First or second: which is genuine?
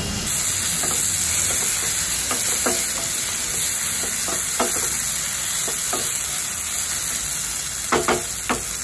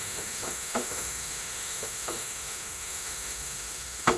first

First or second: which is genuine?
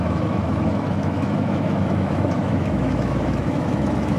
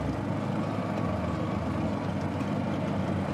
second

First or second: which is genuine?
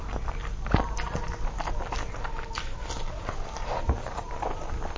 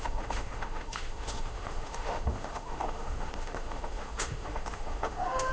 first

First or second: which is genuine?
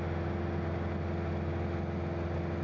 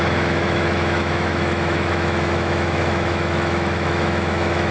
first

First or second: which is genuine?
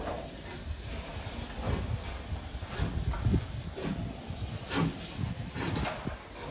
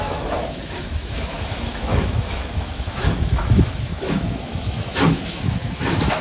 first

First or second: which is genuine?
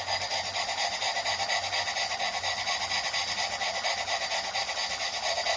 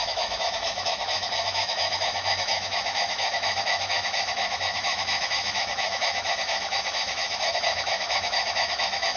first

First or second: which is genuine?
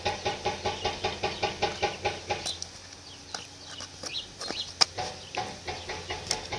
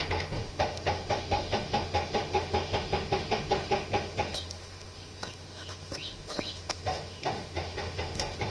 first